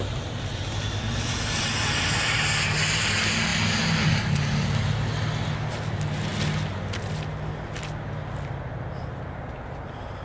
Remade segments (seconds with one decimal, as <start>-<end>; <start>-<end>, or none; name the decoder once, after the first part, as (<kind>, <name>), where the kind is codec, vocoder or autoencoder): none